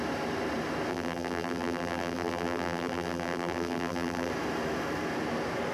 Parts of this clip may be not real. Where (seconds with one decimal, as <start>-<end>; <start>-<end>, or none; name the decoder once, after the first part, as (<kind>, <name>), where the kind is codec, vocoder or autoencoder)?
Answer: 0.9-4.3 (vocoder, BigVGAN v2)

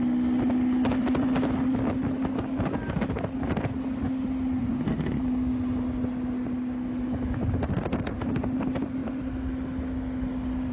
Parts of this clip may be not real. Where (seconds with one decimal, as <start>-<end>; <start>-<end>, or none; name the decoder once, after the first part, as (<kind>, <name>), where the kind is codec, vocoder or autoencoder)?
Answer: none

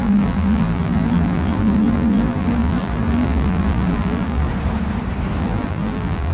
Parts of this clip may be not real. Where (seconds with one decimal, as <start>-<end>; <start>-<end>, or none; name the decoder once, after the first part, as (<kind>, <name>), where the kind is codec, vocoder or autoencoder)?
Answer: 0.0-4.5 (vocoder, BigVGAN v2); 5.4-6.3

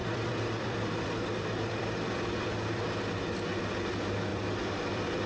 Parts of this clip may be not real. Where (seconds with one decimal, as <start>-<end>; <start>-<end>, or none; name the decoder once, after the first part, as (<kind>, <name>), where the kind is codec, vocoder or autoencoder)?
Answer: 0.0-3.2 (vocoder, BigVGAN v2); 4.3-5.3

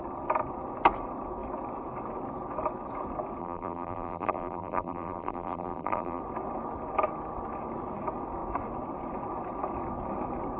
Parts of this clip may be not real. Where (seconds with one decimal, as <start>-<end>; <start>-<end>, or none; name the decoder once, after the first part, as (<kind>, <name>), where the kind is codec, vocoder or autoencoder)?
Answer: 3.4-6.2 (vocoder, BigVGAN v2)

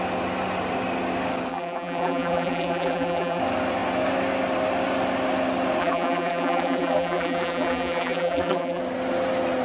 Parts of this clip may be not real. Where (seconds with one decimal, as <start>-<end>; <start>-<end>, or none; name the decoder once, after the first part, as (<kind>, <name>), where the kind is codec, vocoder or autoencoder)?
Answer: 1.5-3.4 (vocoder, BigVGAN v2); 5.8-8.8